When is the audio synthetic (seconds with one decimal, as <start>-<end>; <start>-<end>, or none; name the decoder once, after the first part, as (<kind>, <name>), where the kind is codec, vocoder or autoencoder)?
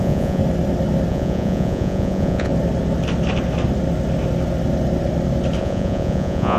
0.0-0.4 (vocoder, Vocos); 1.1-2.5; 5.6-6.6